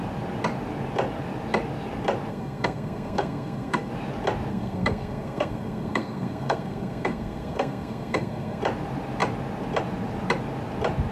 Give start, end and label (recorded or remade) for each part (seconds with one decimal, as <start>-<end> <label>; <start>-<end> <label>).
0.0-2.3 recorded; 2.3-3.9 remade; 3.9-4.5 recorded; 4.5-8.6 remade; 8.6-11.1 recorded